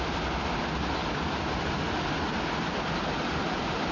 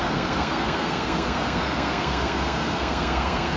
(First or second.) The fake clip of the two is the second